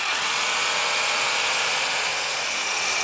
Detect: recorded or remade remade